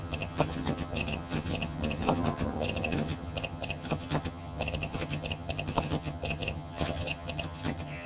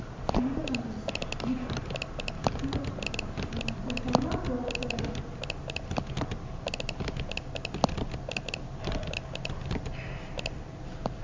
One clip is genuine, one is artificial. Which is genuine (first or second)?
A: second